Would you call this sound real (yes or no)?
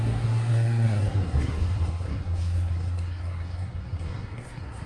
no